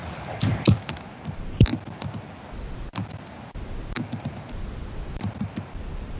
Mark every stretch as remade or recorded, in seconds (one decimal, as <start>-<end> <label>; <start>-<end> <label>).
0.0-1.1 recorded; 1.1-1.7 remade; 1.7-5.4 recorded; 5.4-6.2 remade